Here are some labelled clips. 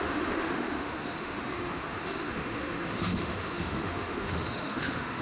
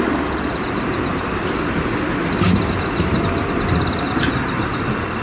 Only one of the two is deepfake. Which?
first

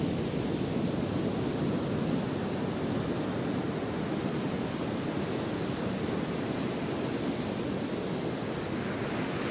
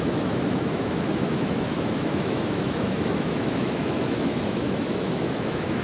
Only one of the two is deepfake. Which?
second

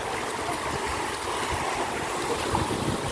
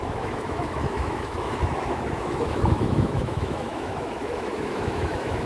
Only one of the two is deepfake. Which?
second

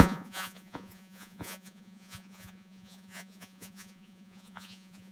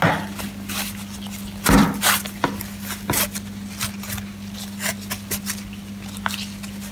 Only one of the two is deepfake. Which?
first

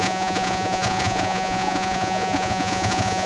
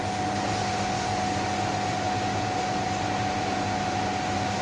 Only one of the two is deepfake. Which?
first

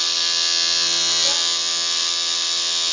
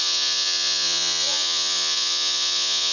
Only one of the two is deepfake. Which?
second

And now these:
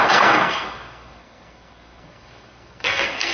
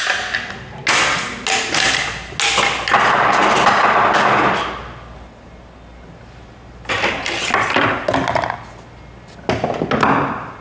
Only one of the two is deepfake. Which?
first